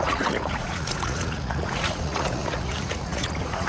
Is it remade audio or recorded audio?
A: remade